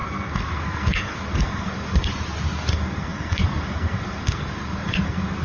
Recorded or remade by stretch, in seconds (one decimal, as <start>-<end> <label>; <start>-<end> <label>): 0.0-2.1 remade; 2.1-2.7 recorded; 2.7-5.4 remade

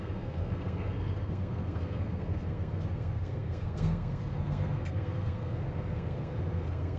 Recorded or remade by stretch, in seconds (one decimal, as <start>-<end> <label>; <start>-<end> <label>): 0.0-7.0 remade

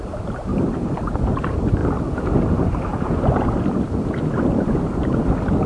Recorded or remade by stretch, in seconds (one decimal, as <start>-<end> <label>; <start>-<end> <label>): 0.0-5.7 recorded

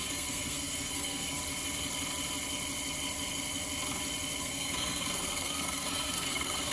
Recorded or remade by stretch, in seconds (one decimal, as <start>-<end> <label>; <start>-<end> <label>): 0.0-1.4 remade; 1.4-4.4 recorded; 4.4-6.7 remade